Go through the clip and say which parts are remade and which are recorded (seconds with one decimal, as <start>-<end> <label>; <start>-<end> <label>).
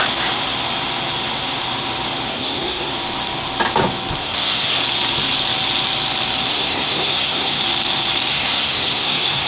0.0-2.3 recorded; 2.3-2.9 remade; 2.9-4.2 recorded; 4.2-4.8 remade; 4.8-6.5 recorded; 6.5-7.6 remade; 7.6-8.3 recorded; 8.3-9.5 remade